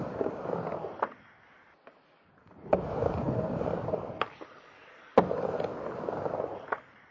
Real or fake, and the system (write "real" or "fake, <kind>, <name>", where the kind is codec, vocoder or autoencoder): real